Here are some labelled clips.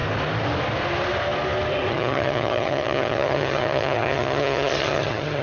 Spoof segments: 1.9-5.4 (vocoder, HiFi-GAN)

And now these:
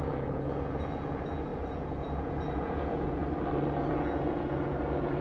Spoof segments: 0.0-3.2 (vocoder, Vocos); 3.9-5.2

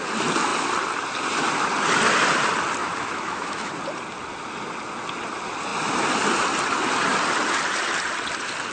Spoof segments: 2.8-3.7 (autoencoder, DAC-VAE)

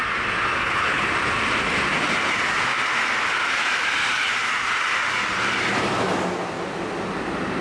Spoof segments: 0.6-1.1 (codec, HILCodec)